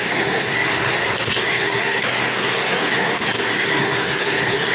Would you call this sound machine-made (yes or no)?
yes